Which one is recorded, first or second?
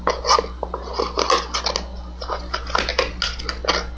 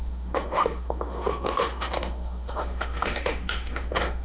first